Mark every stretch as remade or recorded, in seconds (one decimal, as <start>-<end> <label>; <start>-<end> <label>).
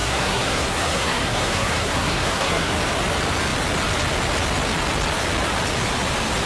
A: 0.0-2.7 remade; 2.7-6.5 recorded